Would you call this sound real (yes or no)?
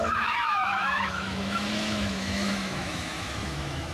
no